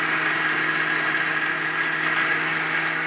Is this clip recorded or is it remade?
recorded